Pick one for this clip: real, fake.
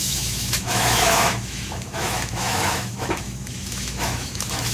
fake